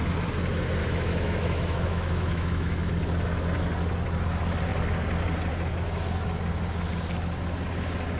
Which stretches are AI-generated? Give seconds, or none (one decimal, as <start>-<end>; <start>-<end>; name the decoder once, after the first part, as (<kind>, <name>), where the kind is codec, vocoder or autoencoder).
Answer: 0.8-2.9 (autoencoder, DAC-VAE)